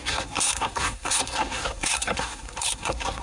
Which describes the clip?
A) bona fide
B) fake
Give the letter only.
B